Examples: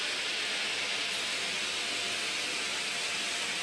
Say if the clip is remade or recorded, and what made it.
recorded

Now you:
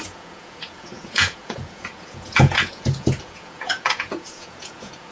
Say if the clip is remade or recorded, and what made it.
remade, vocoder, Vocos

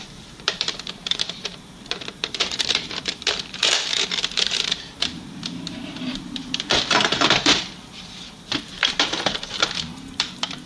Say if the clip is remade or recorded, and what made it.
remade, vocoder, BigVGAN v2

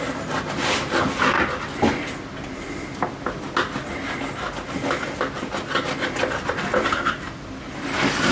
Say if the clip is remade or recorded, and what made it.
recorded